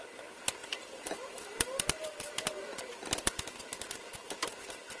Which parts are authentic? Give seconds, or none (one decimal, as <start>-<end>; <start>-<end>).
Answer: 0.0-0.6; 3.6-5.0